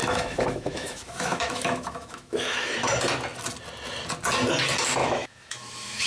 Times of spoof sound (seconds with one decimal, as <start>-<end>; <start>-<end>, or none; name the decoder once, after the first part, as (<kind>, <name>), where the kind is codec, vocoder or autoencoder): 0.0-2.9 (autoencoder, DAC-VAE); 5.0-6.1